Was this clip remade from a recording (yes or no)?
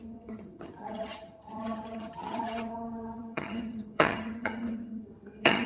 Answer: yes